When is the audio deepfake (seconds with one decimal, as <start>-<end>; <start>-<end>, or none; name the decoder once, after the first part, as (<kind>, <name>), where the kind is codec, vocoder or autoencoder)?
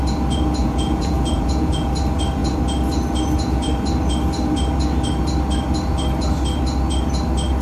0.6-1.9 (vocoder, Vocos)